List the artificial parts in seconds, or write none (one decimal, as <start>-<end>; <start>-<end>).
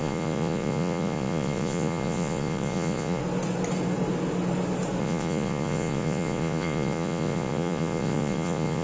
0.0-3.2; 5.0-8.8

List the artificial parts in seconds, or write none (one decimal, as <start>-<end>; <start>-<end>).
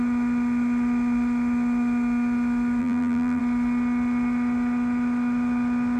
2.8-3.4